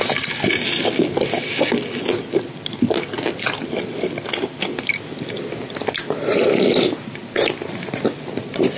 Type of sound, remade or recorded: recorded